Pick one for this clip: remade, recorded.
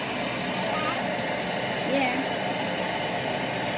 recorded